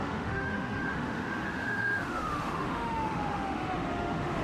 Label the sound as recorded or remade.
remade